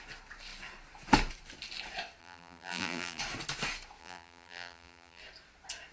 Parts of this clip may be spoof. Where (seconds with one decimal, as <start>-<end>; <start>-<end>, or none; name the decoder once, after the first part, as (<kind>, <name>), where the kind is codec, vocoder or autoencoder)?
2.2-3.2 (vocoder, BigVGAN v2); 4.0-5.2